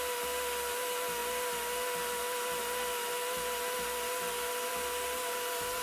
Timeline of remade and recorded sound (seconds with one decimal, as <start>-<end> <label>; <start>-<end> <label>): 0.0-5.8 recorded